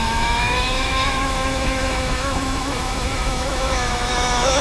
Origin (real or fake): fake